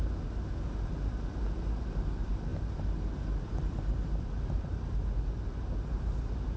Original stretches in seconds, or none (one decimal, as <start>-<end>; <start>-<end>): 0.0-6.6